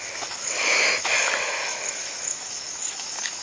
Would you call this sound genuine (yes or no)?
no